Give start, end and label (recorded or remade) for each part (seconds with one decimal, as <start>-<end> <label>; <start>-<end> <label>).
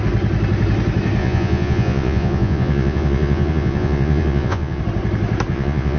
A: 0.0-1.2 recorded; 1.2-4.8 remade; 4.8-5.5 recorded; 5.5-6.0 remade